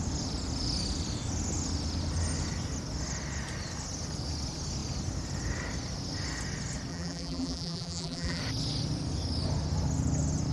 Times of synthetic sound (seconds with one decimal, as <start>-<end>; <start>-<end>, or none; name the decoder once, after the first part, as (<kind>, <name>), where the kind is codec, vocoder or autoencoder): 6.9-8.4 (vocoder, BigVGAN v2)